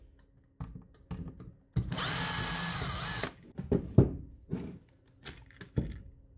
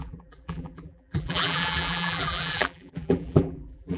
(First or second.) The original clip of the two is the first